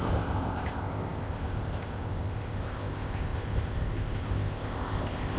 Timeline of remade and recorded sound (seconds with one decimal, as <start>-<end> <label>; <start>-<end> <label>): 0.0-5.4 remade